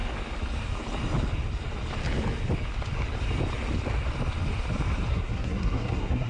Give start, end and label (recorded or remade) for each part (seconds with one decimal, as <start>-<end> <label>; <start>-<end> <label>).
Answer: 0.0-5.1 recorded; 5.1-6.3 remade